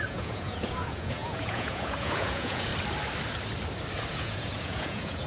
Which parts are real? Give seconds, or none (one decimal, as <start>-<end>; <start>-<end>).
2.7-4.1